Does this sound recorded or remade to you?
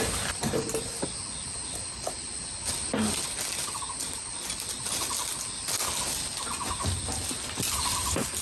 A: recorded